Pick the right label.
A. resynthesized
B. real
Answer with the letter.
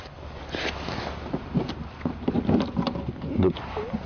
B